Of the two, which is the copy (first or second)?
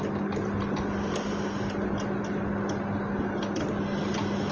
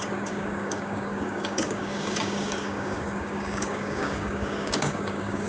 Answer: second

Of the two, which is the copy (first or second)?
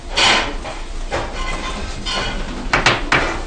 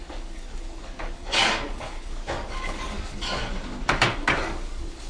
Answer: second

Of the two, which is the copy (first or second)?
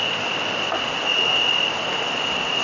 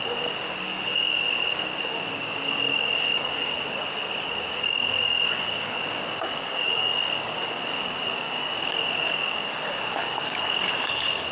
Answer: second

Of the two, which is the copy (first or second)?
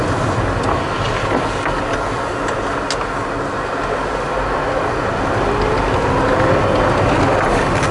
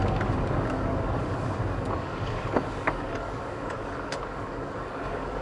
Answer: second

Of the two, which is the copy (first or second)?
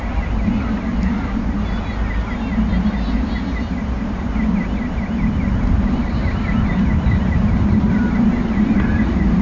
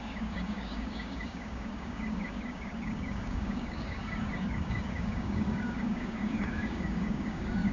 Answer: second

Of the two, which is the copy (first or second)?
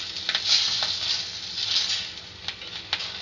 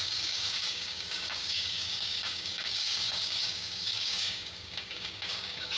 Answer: second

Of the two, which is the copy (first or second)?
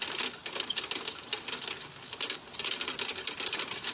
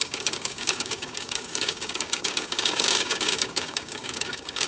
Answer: second